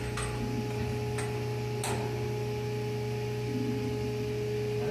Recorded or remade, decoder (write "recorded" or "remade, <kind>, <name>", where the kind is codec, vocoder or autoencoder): recorded